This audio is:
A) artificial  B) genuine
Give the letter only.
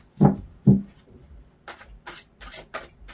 B